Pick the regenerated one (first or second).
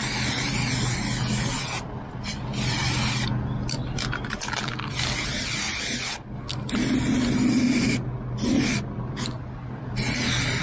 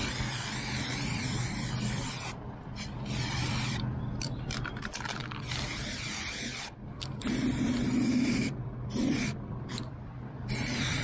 second